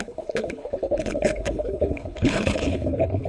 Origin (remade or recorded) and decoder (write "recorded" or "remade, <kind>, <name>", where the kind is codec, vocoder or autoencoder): remade, codec, HILCodec